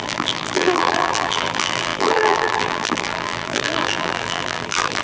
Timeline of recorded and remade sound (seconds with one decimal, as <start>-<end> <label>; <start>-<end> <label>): 0.0-5.0 remade